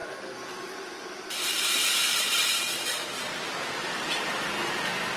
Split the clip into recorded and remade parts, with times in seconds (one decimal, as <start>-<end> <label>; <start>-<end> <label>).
0.0-2.0 recorded; 2.0-4.2 remade; 4.2-5.2 recorded